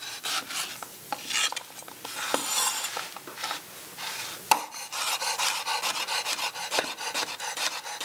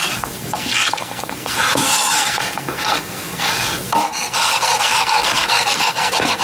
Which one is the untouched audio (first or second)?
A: first